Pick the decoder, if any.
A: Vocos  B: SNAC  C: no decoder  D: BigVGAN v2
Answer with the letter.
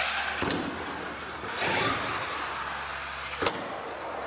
C